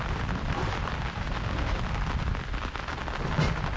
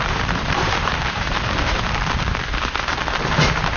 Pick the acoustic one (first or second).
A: first